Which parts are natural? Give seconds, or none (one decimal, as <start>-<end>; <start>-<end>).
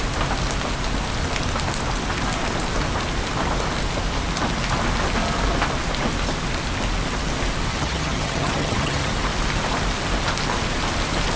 0.0-7.7; 9.1-11.4